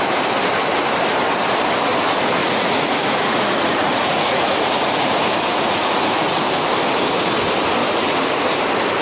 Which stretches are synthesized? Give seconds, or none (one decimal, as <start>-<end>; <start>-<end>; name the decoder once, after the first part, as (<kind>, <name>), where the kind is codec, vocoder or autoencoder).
2.4-5.0 (vocoder, Vocos); 5.5-6.4; 7.8-8.4